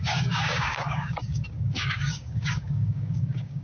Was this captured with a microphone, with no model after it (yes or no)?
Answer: no